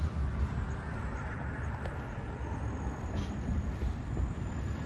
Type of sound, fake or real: real